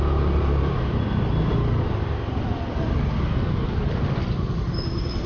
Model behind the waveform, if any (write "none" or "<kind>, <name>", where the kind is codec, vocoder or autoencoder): none